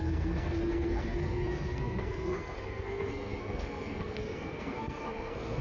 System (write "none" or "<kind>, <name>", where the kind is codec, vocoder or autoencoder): codec, SNAC